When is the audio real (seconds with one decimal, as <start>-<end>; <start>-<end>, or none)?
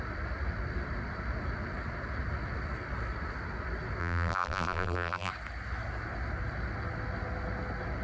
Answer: 0.0-4.0; 5.3-8.0